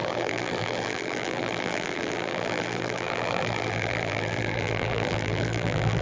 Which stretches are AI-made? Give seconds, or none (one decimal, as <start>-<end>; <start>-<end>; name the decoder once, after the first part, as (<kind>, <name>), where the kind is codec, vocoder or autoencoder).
0.0-6.0 (vocoder, BigVGAN v2)